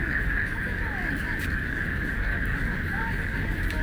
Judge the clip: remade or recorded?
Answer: remade